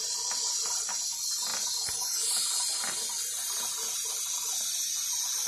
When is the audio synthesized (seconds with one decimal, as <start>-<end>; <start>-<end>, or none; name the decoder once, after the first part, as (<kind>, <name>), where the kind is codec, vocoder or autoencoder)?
none